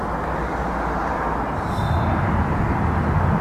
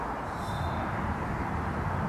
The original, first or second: first